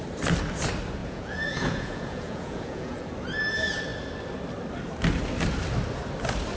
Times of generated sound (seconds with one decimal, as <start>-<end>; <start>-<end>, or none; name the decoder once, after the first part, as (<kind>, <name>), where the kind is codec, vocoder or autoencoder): 1.0-3.1 (vocoder, Vocos)